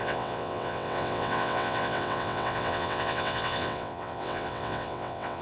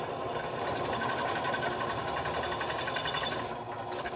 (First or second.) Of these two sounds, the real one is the second